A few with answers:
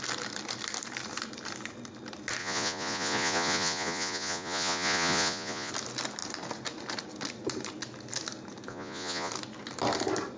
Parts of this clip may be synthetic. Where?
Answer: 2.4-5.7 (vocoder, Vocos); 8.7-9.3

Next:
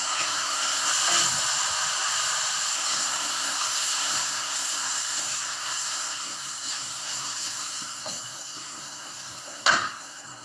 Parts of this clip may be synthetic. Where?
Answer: 0.0-0.9 (codec, SNAC); 2.7-10.4

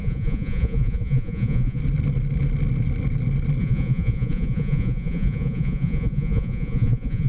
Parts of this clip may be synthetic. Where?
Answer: 0.0-1.8 (vocoder, Vocos); 3.6-7.3

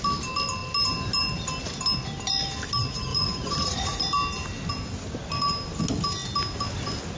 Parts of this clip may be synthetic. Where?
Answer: 3.1-4.0 (vocoder, Vocos)